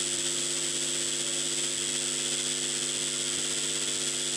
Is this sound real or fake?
real